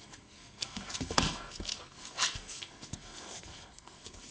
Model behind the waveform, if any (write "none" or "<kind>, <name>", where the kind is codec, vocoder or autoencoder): codec, SNAC